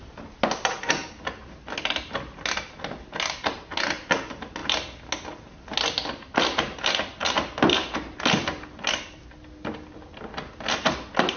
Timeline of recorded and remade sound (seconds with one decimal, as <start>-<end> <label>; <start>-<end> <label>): 0.0-11.4 recorded